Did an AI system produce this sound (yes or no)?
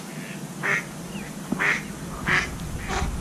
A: no